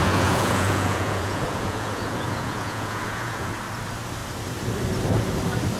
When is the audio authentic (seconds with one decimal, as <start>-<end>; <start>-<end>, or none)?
3.5-5.8